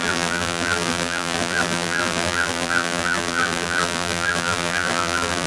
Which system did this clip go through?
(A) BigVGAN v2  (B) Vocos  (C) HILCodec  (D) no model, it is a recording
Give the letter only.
A